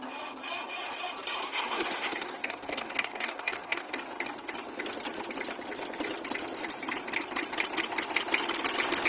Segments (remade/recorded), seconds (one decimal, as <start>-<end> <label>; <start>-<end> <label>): 0.0-1.4 recorded; 1.4-3.9 remade; 3.9-9.1 recorded